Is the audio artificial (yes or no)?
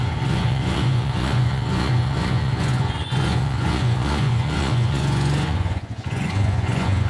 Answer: yes